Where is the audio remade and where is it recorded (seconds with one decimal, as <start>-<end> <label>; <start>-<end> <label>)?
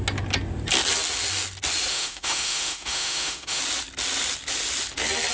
0.0-1.9 recorded; 1.9-3.6 remade; 3.6-5.3 recorded